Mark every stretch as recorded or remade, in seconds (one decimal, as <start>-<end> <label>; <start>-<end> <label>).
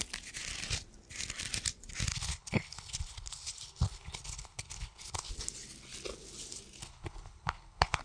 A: 0.0-2.1 recorded; 2.1-5.3 remade; 5.3-6.8 recorded; 6.8-8.0 remade